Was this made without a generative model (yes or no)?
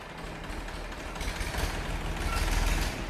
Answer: yes